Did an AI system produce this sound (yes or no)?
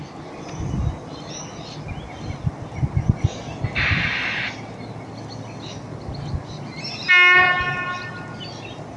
no